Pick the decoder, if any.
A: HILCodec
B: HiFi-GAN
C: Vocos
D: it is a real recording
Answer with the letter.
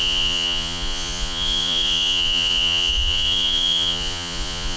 C